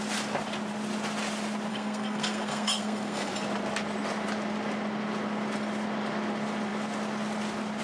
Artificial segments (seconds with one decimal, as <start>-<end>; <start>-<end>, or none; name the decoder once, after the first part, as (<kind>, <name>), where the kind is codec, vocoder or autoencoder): 1.7-3.3 (codec, SNAC)